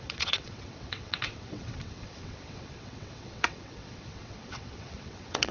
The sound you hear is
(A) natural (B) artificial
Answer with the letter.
B